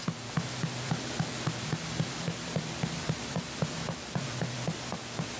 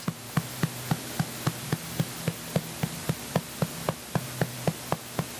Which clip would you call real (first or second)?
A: second